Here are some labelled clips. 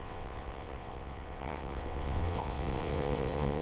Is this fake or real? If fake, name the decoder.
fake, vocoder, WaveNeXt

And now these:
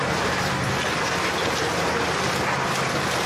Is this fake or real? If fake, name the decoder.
real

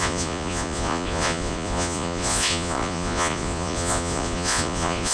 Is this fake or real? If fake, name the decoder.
fake, vocoder, Vocos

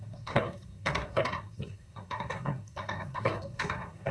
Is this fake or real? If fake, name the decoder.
fake, codec, SNAC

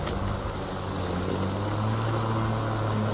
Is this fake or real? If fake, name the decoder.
real